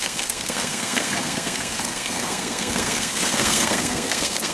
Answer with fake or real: fake